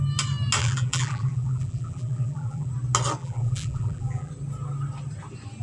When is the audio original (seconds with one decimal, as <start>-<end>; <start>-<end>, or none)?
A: 0.0-0.6; 2.7-3.2; 4.3-5.6